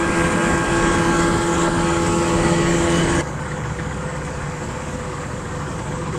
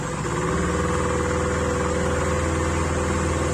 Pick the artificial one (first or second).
first